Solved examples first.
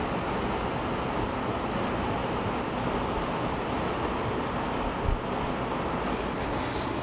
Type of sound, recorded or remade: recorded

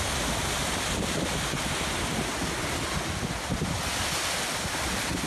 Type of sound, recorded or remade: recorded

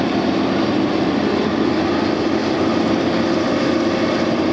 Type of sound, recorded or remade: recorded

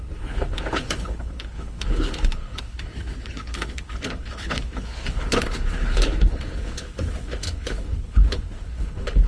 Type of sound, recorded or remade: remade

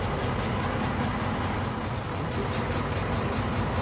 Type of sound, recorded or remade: recorded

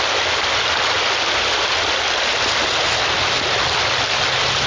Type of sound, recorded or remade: recorded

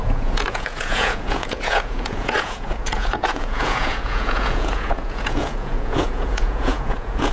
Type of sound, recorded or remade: remade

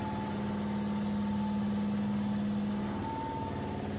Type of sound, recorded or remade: recorded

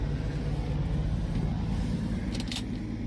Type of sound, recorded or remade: recorded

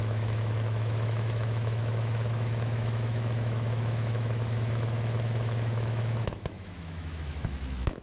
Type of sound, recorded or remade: remade